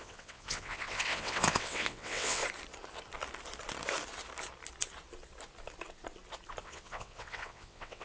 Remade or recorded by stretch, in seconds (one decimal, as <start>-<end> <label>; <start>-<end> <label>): 0.0-2.4 remade; 2.4-6.6 recorded; 6.6-8.0 remade